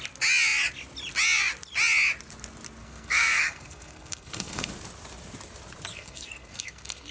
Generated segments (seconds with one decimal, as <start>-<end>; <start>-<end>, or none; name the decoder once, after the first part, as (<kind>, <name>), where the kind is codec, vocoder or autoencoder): 2.8-4.7 (codec, SNAC); 5.9-7.1